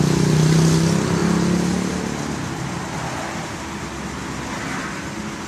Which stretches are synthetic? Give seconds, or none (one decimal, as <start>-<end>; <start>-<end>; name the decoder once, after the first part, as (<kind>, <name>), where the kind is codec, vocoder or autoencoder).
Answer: none